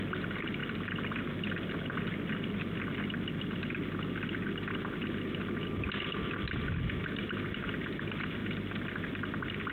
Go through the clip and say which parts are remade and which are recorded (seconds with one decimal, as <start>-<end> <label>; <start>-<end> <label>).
0.0-9.7 recorded